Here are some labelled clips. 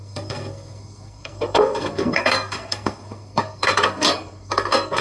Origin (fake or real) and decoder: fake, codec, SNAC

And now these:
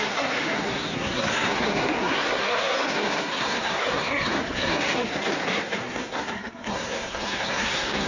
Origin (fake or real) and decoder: fake, codec, SNAC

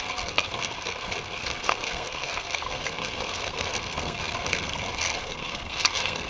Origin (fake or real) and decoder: fake, codec, SNAC